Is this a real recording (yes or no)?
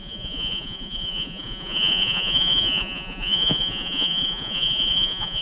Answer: no